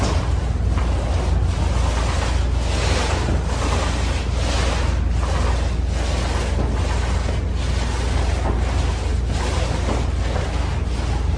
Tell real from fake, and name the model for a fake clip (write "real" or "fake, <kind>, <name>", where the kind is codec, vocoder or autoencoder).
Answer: real